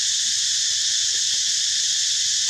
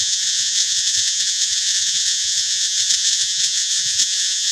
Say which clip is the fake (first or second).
second